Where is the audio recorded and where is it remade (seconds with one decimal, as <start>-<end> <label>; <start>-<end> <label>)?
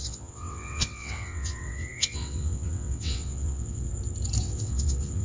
0.0-3.9 remade; 3.9-4.4 recorded; 4.4-5.2 remade